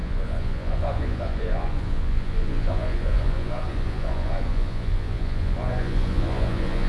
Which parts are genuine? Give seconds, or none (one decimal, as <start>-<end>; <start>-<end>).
none